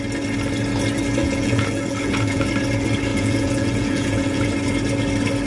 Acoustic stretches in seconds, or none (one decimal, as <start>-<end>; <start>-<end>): 0.0-1.2; 2.5-3.1; 4.5-5.5